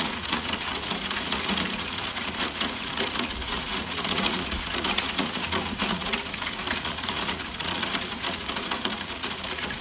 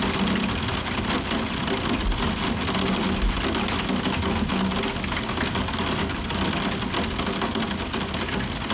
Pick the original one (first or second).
second